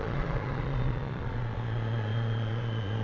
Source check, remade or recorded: remade